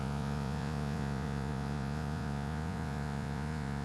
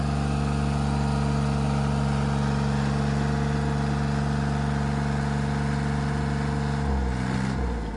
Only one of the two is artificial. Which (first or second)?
first